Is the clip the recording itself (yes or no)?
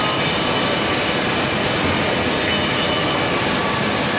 yes